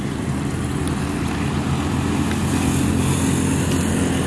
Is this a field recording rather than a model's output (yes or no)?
yes